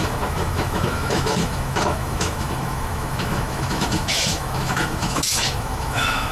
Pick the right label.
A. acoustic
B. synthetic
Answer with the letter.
B